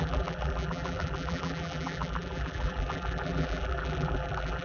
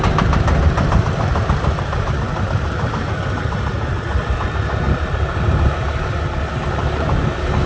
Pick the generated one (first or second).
first